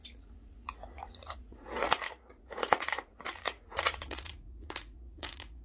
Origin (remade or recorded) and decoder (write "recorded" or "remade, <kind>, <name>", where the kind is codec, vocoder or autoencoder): remade, vocoder, Vocos